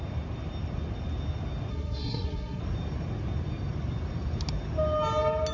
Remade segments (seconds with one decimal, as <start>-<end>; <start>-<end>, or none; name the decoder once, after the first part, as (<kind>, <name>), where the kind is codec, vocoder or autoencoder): 1.7-2.6 (codec, SNAC)